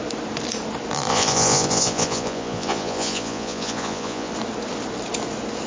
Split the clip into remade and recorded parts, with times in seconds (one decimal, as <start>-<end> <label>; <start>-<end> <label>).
0.0-1.1 recorded; 1.1-4.3 remade; 4.3-5.7 recorded